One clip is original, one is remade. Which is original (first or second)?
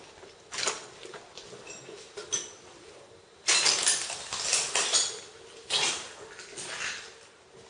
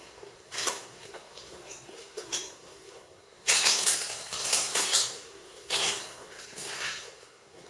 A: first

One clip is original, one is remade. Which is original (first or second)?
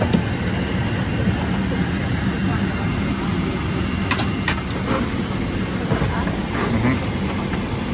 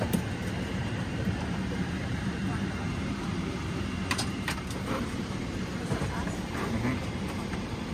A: first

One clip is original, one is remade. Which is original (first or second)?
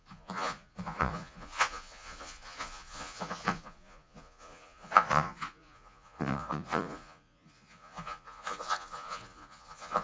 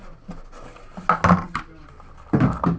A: second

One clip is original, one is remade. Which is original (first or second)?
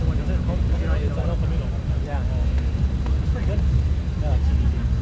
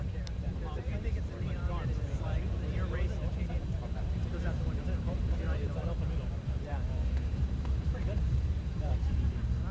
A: first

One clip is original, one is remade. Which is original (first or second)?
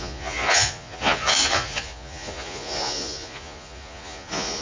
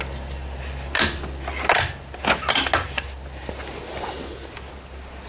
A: second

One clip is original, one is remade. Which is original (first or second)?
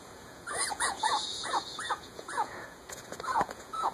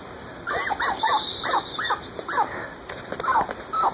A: second